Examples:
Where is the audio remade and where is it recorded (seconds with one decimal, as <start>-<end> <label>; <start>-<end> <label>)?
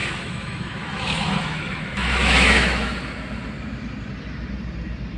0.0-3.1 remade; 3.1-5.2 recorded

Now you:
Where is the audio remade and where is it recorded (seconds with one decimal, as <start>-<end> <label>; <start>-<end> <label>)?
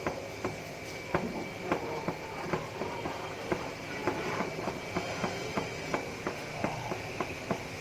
0.0-6.1 recorded; 6.1-6.9 remade; 6.9-7.8 recorded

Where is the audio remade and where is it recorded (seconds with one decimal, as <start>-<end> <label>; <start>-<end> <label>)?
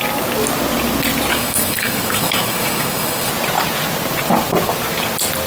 0.0-1.3 recorded; 1.3-3.3 remade; 3.3-5.5 recorded